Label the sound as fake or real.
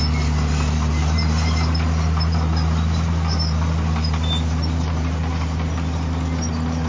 real